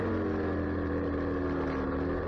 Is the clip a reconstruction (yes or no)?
no